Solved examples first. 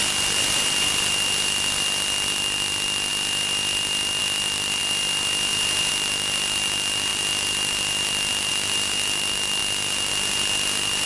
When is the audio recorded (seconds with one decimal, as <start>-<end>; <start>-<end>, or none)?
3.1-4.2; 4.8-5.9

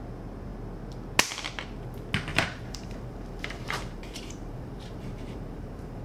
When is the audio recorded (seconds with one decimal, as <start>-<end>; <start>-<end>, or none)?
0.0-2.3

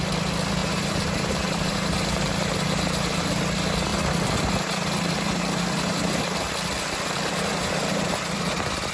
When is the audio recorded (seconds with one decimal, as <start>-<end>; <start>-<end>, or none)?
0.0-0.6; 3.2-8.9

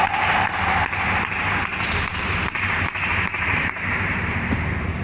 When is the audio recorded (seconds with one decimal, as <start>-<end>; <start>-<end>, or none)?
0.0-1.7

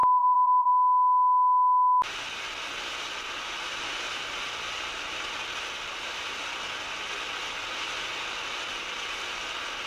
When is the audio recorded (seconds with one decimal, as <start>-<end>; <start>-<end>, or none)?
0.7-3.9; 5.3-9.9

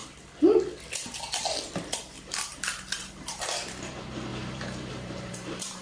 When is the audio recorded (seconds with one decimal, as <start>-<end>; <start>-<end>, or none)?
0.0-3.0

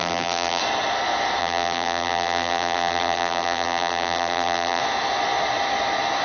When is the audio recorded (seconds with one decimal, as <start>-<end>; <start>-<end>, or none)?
0.6-1.4; 4.8-6.2

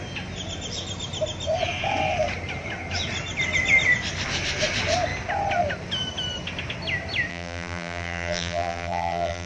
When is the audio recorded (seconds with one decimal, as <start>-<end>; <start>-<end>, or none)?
0.0-7.3